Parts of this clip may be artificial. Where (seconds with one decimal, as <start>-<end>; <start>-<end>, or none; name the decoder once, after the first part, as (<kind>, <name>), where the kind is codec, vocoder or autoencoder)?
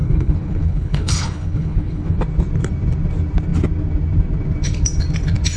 0.0-2.2 (codec, HILCodec)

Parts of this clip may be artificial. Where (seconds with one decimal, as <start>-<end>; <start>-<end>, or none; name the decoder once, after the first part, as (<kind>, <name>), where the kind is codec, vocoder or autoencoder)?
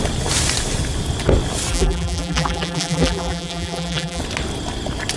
1.7-4.2 (vocoder, BigVGAN v2)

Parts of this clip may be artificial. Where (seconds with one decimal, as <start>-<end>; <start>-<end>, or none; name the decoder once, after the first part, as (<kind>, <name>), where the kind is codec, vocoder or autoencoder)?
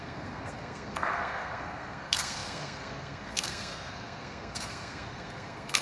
0.0-5.8 (codec, SNAC)